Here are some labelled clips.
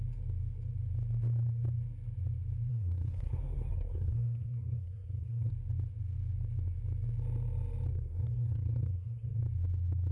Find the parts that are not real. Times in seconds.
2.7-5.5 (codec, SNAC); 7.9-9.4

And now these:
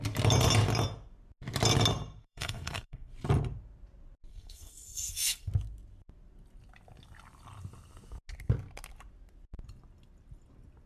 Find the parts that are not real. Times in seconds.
2.2-3.1 (codec, SNAC); 4.3-5.5

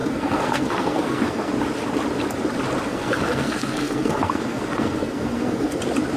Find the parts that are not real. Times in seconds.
0.0-1.5 (codec, SNAC); 2.9-5.8

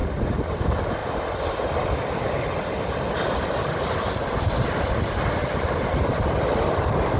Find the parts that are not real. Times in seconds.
none

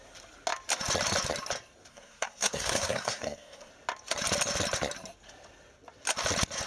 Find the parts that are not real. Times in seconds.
1.9-3.7 (codec, SNAC)

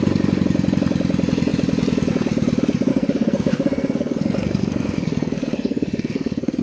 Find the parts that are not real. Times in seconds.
2.9-6.6 (codec, SNAC)